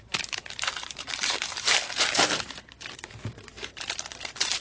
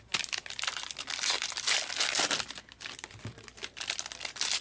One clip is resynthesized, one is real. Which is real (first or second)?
second